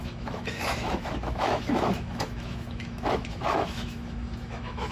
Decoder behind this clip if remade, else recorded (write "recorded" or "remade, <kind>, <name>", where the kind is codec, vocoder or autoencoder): remade, autoencoder, DAC-VAE